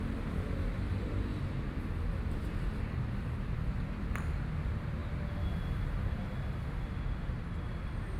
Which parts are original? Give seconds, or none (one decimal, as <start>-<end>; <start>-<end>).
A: 0.0-8.2